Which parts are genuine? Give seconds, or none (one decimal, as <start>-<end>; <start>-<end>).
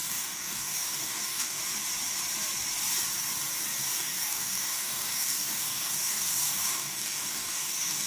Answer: 1.6-3.8